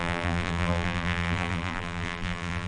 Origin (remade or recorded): remade